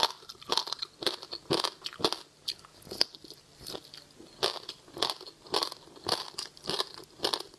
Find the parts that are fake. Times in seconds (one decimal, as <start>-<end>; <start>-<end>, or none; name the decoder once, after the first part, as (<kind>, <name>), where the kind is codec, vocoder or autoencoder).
none